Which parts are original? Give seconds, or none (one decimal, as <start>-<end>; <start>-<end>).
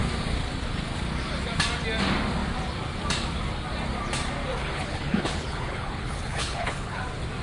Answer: 0.0-4.6; 7.0-7.4